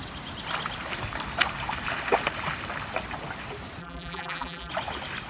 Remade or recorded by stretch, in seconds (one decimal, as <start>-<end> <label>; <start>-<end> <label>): 0.0-3.8 recorded; 3.8-4.7 remade; 4.7-5.3 recorded